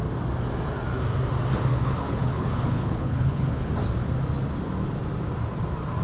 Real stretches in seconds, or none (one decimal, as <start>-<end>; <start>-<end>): 0.0-1.7; 3.7-6.0